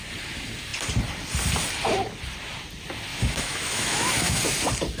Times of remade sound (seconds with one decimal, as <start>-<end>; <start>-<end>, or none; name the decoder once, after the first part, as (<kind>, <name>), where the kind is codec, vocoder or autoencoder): 3.1-4.4 (autoencoder, DAC-VAE)